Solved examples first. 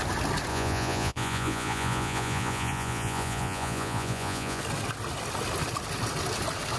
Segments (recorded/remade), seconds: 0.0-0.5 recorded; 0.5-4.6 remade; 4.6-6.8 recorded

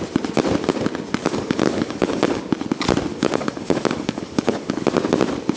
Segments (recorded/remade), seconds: 0.0-1.2 recorded; 1.2-2.4 remade; 2.4-3.1 recorded; 3.1-4.7 remade; 4.7-5.6 recorded

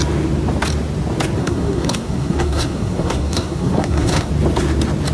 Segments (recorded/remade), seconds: 0.0-1.4 recorded; 1.4-4.3 remade; 4.3-5.1 recorded